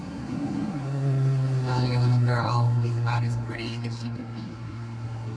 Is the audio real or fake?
fake